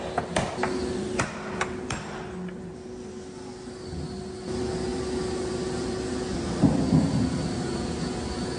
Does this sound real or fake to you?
real